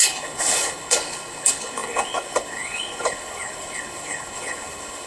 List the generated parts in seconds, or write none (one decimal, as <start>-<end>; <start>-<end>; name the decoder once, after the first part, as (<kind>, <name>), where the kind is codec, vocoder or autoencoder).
0.0-5.1 (codec, HILCodec)